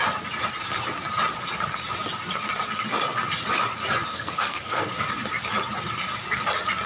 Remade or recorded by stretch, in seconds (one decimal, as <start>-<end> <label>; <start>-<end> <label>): 0.0-4.1 recorded; 4.1-4.9 remade; 4.9-6.9 recorded